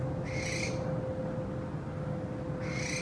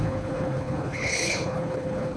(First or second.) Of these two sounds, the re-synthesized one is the second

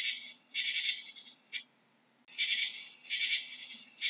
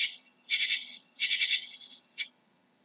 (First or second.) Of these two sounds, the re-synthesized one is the second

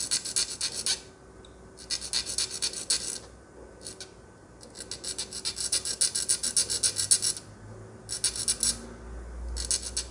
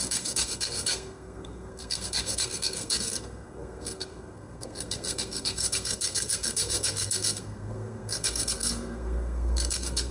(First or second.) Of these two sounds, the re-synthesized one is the second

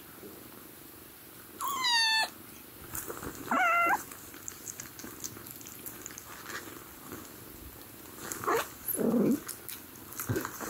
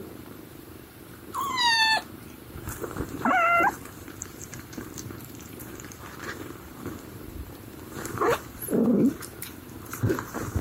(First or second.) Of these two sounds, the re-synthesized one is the second